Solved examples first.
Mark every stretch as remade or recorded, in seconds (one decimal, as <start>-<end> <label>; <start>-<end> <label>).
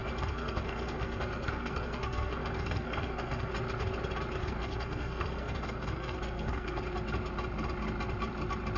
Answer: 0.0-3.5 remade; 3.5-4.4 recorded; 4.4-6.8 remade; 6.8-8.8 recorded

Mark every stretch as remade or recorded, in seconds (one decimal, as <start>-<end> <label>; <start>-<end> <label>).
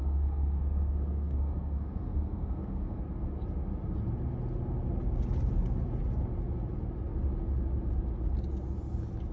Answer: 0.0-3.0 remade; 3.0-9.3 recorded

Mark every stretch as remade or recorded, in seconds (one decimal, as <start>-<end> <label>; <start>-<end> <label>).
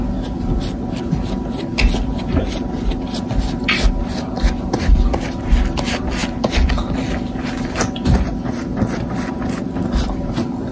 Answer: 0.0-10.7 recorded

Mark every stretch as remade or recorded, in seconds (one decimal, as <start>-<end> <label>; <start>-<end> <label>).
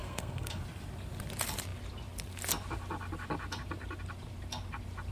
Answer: 0.0-0.6 remade; 0.6-5.1 recorded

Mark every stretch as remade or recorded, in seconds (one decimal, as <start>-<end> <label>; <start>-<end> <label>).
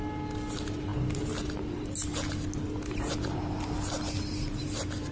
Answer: 0.0-5.1 recorded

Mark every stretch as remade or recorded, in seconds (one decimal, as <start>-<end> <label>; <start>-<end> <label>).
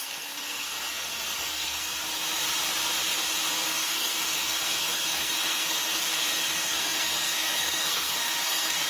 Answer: 0.0-2.0 remade; 2.0-3.5 recorded; 3.5-8.9 remade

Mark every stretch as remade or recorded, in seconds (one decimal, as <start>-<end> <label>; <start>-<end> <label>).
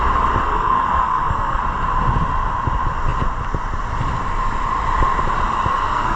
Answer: 0.0-0.4 recorded; 0.4-1.6 remade; 1.6-5.7 recorded; 5.7-6.2 remade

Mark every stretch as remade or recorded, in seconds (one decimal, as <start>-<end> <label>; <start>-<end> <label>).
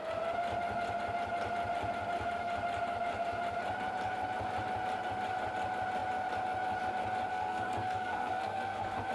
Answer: 0.0-7.3 recorded; 7.3-9.1 remade